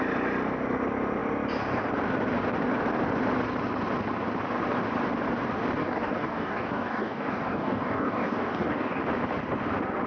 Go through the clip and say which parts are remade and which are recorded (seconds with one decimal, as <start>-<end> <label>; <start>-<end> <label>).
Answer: 0.0-5.8 recorded; 5.8-9.0 remade; 9.0-10.1 recorded

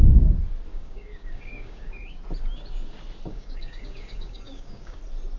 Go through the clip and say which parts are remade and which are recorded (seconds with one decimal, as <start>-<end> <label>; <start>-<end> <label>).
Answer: 0.0-0.7 recorded; 0.7-2.2 remade; 2.2-3.3 recorded; 3.3-5.0 remade; 5.0-5.4 recorded

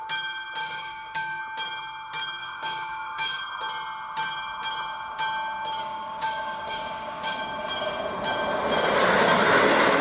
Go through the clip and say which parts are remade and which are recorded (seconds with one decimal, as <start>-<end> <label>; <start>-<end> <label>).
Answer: 0.0-0.6 recorded; 0.6-1.4 remade; 1.4-2.4 recorded; 2.4-3.4 remade; 3.4-5.8 recorded; 5.8-7.4 remade; 7.4-10.0 recorded